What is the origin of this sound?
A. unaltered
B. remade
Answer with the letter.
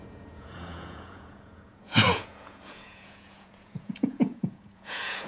B